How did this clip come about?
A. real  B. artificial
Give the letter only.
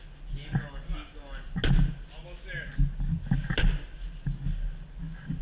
A